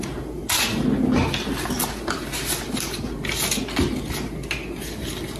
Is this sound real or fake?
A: real